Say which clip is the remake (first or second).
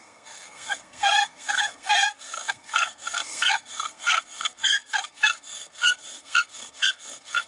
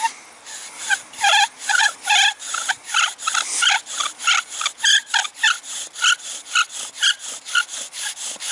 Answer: first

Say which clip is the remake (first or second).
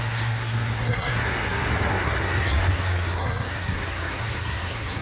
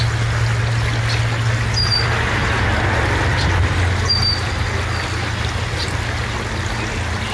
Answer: first